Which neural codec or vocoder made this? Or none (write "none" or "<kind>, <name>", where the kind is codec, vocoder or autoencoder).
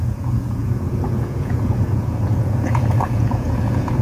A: vocoder, Vocos